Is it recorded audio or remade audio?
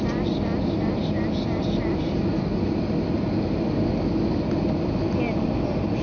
recorded